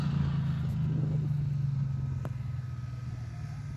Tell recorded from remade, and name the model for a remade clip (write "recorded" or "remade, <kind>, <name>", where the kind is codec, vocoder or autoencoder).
recorded